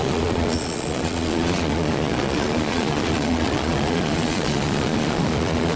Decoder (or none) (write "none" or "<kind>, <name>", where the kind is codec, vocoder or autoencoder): vocoder, Vocos